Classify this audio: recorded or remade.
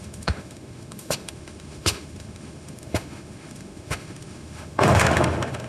remade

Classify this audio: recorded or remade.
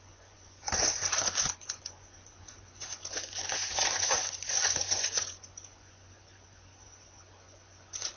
remade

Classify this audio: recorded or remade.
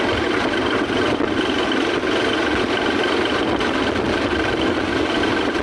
recorded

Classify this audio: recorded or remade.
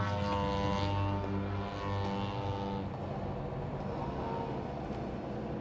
recorded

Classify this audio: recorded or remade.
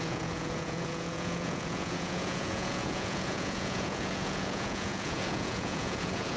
remade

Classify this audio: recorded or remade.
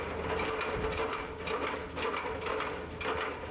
recorded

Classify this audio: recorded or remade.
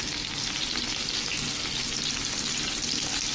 recorded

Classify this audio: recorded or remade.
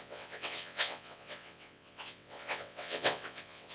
remade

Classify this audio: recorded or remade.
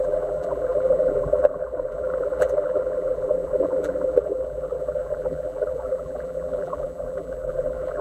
remade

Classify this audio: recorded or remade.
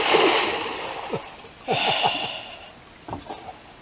recorded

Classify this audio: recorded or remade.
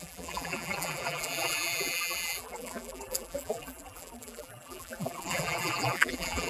remade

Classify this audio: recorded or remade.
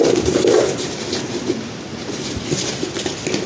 recorded